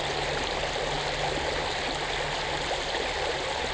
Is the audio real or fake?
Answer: real